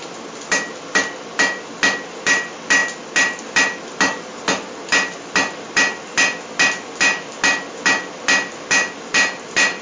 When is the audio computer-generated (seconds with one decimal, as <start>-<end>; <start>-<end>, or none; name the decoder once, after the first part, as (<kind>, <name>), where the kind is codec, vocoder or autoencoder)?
none